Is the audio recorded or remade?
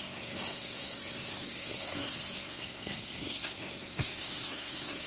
remade